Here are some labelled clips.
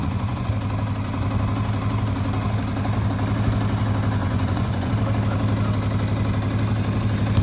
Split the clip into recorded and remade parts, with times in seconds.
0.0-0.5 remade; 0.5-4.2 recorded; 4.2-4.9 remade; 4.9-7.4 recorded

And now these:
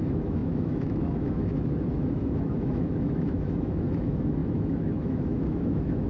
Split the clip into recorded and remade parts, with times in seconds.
0.0-6.1 remade

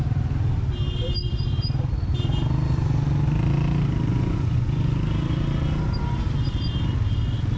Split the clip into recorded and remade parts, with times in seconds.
0.0-4.1 recorded; 4.1-5.0 remade; 5.0-7.6 recorded

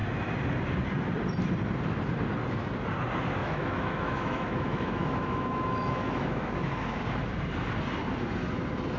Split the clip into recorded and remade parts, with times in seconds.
0.0-3.4 recorded; 3.4-7.0 remade; 7.0-9.0 recorded

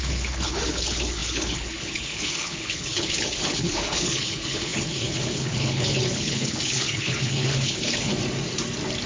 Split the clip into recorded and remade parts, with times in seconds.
0.0-8.1 remade; 8.1-9.1 recorded